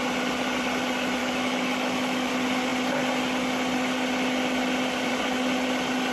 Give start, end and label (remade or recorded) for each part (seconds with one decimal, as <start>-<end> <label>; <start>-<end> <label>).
0.0-1.2 recorded; 1.2-2.3 remade; 2.3-6.1 recorded